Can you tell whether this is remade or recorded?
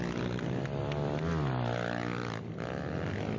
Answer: recorded